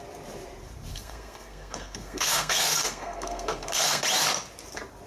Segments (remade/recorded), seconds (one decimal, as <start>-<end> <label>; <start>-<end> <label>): 0.0-0.9 recorded; 0.9-4.0 remade; 4.0-5.1 recorded